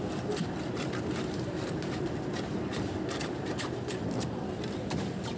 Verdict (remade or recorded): recorded